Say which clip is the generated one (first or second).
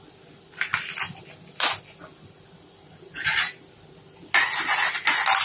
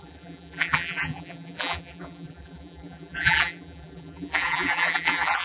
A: second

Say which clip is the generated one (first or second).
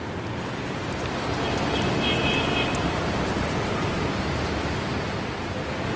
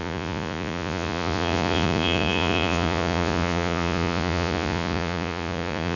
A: second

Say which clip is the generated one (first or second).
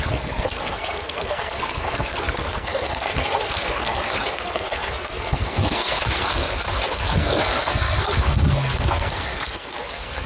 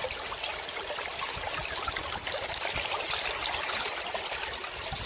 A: first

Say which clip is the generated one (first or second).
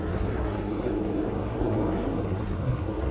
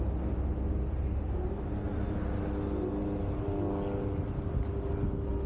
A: first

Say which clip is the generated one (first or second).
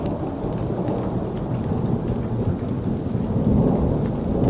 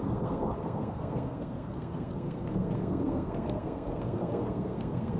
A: second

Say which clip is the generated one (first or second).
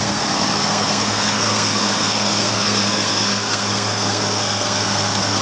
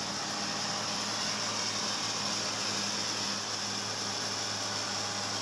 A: first